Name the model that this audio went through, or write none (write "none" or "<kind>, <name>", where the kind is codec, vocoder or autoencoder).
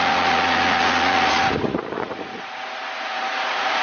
vocoder, Vocos